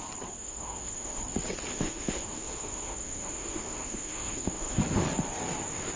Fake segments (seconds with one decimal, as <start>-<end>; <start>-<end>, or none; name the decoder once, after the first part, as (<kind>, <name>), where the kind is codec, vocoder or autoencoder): 0.4-1.2 (autoencoder, DAC-VAE); 1.7-4.8